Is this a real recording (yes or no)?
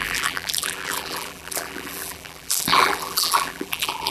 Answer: no